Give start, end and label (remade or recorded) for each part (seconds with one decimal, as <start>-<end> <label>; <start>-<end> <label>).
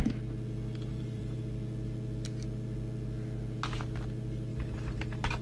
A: 0.0-0.9 recorded; 0.9-1.4 remade; 1.4-4.5 recorded; 4.5-5.4 remade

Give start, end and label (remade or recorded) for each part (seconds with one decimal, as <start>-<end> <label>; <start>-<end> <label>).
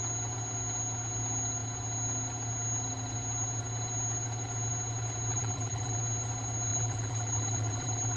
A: 0.0-5.3 recorded; 5.3-6.0 remade; 6.0-6.7 recorded; 6.7-8.2 remade